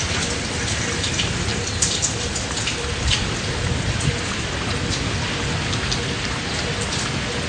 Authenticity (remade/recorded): recorded